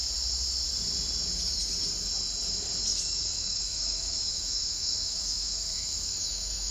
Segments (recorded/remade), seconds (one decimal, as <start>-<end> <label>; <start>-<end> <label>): 0.0-2.9 recorded; 2.9-6.7 remade